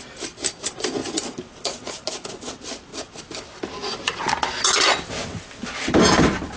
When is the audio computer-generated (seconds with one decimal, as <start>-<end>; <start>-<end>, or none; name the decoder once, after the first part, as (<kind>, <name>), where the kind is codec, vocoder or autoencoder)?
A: none